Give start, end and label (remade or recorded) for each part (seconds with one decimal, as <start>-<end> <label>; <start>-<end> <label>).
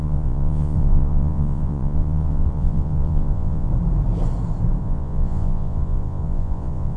0.0-3.7 remade; 3.7-4.8 recorded; 4.8-7.0 remade